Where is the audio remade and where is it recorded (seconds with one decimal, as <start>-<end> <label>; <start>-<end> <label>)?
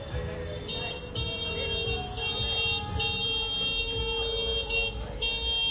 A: 0.0-5.7 recorded